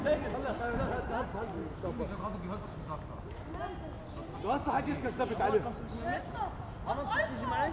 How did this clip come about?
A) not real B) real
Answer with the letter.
B